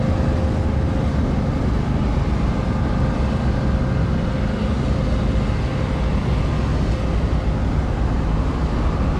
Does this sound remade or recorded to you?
recorded